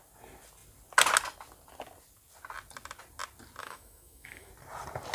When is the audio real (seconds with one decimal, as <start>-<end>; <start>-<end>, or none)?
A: 0.0-3.6; 4.5-5.1